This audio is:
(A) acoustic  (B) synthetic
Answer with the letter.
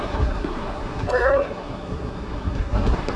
B